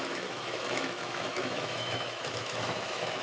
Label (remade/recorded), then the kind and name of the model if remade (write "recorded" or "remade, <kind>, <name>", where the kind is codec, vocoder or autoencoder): remade, autoencoder, DAC-VAE